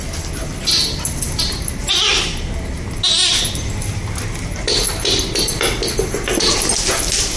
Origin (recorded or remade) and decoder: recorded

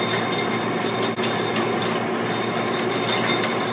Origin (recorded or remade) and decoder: recorded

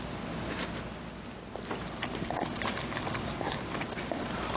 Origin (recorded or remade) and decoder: recorded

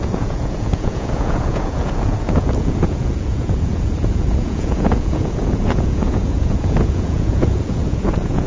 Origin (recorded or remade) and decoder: remade, vocoder, Vocos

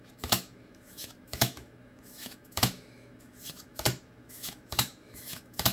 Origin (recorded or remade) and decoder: remade, autoencoder, DAC-VAE